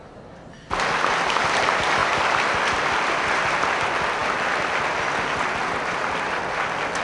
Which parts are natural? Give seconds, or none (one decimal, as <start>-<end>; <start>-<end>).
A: 0.0-7.0